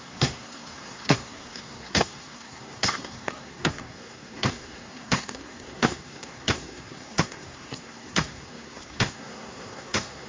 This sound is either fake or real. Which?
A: fake